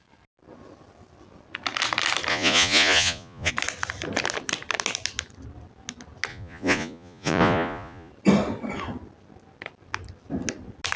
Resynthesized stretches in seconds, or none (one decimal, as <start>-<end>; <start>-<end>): 2.3-3.5; 6.3-8.1